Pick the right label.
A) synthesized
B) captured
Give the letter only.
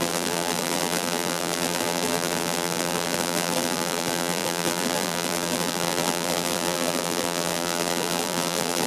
A